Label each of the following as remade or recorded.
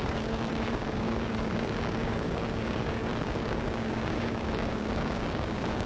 remade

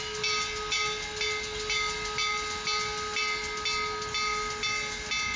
recorded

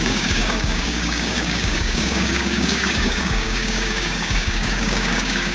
remade